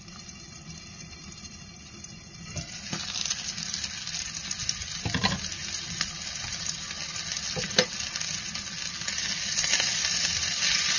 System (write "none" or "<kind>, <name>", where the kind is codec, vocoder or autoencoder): none